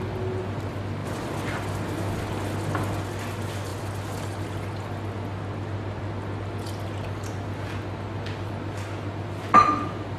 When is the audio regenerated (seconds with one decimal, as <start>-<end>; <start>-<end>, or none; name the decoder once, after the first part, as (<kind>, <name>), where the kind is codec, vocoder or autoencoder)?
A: none